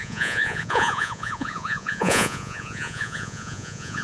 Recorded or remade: remade